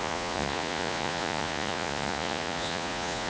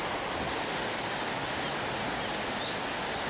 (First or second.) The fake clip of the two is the first